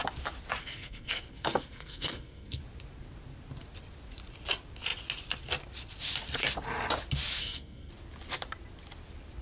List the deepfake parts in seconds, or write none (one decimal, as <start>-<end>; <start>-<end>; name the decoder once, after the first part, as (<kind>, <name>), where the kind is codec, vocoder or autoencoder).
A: 0.6-2.6 (codec, SNAC); 7.4-7.9